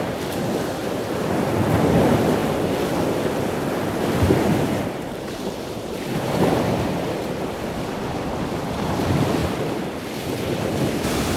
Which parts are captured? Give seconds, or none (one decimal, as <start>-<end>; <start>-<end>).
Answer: 0.0-0.8; 1.5-4.5; 6.6-11.4